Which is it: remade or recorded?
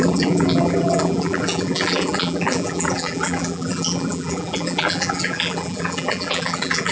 remade